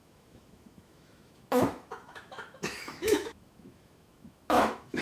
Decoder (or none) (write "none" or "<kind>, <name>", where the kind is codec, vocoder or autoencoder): autoencoder, DAC-VAE